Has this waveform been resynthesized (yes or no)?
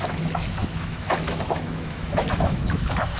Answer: yes